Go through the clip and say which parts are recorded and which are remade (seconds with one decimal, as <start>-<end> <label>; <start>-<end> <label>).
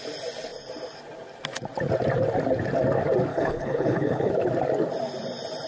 0.0-3.3 recorded; 3.3-4.3 remade; 4.3-5.7 recorded